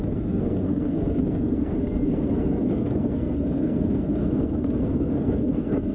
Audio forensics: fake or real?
fake